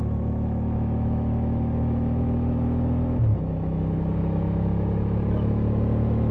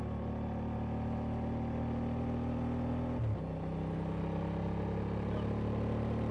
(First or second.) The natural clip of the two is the second